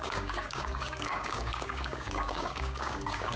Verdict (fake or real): fake